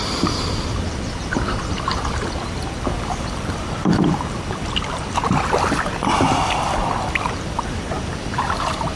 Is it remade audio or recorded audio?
remade